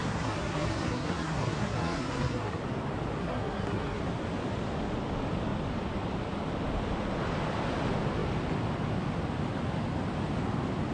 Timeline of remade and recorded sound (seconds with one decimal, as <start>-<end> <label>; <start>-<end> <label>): 0.0-2.6 remade; 2.6-3.2 recorded; 3.2-4.0 remade; 4.0-10.9 recorded